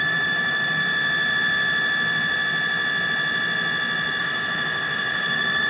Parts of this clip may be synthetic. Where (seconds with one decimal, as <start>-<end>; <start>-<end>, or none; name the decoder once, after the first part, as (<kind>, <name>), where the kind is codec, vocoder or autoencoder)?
0.0-0.8 (autoencoder, DAC-VAE); 4.2-5.7